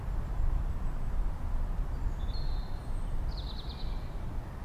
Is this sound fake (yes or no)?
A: no